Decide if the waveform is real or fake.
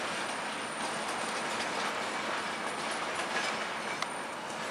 real